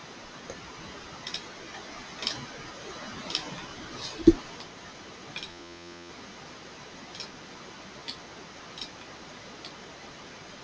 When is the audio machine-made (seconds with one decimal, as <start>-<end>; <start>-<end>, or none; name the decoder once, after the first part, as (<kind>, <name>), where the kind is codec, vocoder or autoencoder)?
5.5-6.1 (vocoder, Vocos)